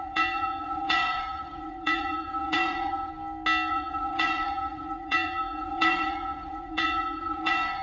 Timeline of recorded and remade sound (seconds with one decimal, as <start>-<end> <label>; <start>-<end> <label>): 0.0-3.1 remade; 3.1-3.7 recorded; 3.7-7.8 remade